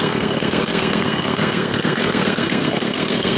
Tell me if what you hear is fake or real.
fake